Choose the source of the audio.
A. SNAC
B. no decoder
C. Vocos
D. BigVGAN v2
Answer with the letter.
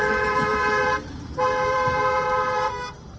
D